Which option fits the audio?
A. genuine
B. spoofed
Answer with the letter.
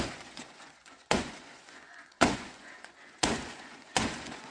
B